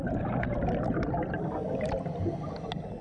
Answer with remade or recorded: recorded